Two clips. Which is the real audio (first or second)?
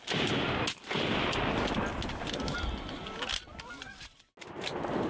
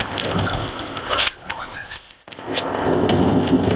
first